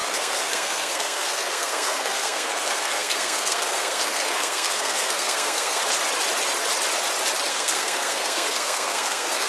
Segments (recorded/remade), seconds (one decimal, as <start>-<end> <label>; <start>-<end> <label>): 0.0-5.8 remade; 5.8-7.5 recorded; 7.5-9.5 remade